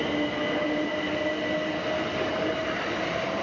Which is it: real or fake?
real